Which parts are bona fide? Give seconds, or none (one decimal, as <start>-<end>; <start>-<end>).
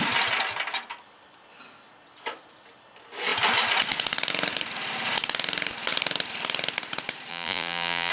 0.0-7.3